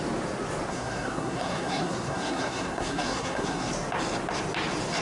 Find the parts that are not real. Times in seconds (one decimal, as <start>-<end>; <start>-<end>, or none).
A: 0.7-3.7